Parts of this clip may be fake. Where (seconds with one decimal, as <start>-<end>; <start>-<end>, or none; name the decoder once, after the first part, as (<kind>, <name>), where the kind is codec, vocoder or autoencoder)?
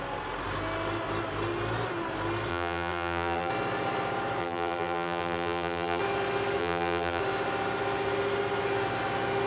2.5-3.5 (vocoder, BigVGAN v2); 4.4-6.0; 6.6-7.2